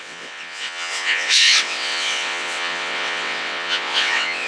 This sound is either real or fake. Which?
fake